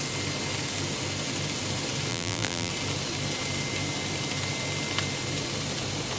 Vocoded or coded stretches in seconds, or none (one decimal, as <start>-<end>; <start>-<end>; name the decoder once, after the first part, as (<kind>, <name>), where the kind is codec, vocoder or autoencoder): 2.1-2.7 (vocoder, BigVGAN v2)

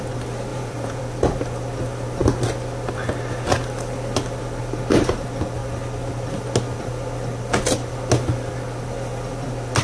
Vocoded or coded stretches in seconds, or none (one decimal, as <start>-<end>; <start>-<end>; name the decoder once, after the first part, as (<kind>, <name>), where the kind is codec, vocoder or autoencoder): 0.5-1.0 (vocoder, Vocos)

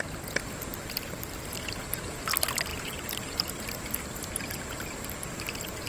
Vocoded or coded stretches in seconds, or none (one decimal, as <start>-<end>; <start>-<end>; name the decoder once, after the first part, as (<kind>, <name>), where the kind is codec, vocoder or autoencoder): 0.7-1.5 (vocoder, BigVGAN v2); 2.7-3.6